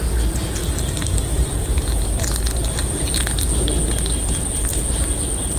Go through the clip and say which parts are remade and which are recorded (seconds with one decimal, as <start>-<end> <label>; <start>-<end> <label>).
0.0-5.6 recorded

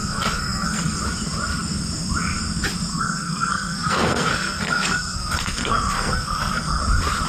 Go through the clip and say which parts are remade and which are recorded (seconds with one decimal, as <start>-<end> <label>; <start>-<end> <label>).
0.0-1.0 remade; 1.0-2.9 recorded; 2.9-6.8 remade; 6.8-7.3 recorded

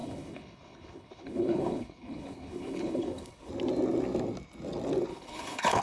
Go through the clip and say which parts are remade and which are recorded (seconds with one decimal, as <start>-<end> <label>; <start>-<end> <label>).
0.0-3.5 remade; 3.5-5.1 recorded; 5.1-5.8 remade

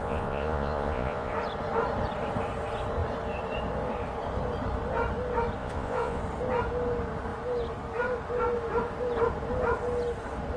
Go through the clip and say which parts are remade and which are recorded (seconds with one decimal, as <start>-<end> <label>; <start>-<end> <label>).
0.0-1.3 remade; 1.3-5.6 recorded; 5.6-6.2 remade; 6.2-10.6 recorded

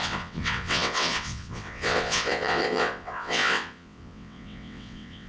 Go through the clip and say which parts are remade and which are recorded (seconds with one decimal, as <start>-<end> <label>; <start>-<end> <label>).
0.0-5.3 remade

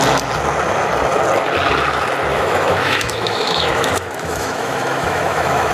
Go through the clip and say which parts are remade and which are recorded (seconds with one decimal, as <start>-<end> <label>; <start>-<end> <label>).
0.0-2.3 recorded; 2.3-5.7 remade

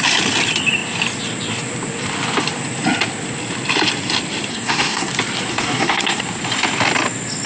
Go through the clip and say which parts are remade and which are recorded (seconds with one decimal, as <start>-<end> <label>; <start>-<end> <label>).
0.0-4.5 recorded; 4.5-5.1 remade; 5.1-5.5 recorded; 5.5-6.2 remade; 6.2-7.5 recorded